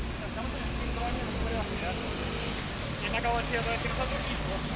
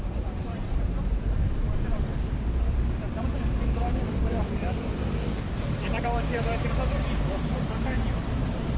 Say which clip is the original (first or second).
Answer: first